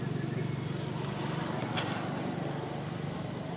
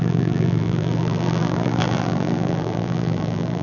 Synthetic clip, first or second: second